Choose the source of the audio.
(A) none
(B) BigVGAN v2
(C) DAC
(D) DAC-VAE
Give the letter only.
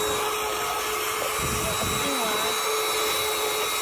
A